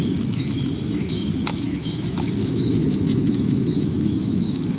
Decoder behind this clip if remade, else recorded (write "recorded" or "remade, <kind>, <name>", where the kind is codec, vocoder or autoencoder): remade, autoencoder, DAC-VAE